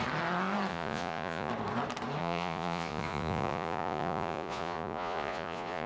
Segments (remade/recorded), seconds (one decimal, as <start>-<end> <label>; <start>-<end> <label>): 0.0-0.7 recorded; 0.7-1.5 remade; 1.5-2.2 recorded; 2.2-5.9 remade